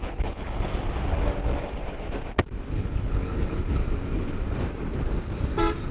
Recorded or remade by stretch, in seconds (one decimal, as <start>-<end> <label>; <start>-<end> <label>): 0.0-0.7 remade; 0.7-2.7 recorded; 2.7-3.8 remade; 3.8-5.9 recorded